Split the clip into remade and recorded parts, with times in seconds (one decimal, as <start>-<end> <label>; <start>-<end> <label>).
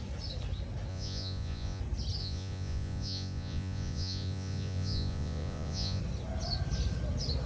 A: 0.0-0.9 recorded; 0.9-1.8 remade; 1.8-2.2 recorded; 2.2-6.0 remade; 6.0-7.5 recorded